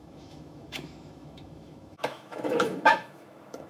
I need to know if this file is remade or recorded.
remade